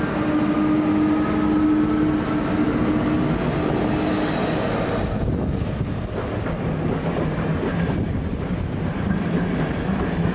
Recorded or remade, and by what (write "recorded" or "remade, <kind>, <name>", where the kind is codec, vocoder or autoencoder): recorded